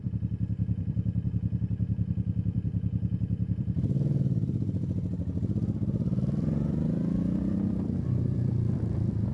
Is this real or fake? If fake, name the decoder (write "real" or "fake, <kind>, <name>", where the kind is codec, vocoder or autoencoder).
fake, vocoder, BigVGAN v2